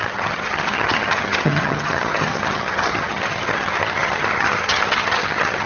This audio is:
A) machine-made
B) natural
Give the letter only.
A